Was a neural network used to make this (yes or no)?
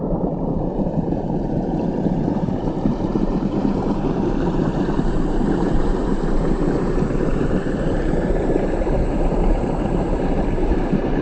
yes